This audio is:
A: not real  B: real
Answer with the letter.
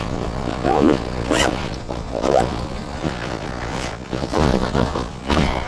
A